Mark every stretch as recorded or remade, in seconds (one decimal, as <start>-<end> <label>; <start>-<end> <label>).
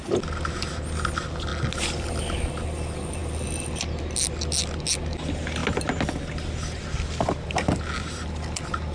0.0-8.9 recorded